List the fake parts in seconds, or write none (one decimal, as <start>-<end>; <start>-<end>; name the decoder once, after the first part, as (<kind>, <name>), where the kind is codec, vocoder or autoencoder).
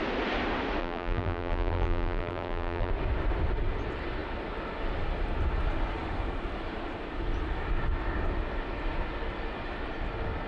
0.8-2.9 (vocoder, BigVGAN v2)